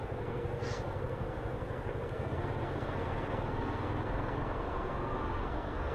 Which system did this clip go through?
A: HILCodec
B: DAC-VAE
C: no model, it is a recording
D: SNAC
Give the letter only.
D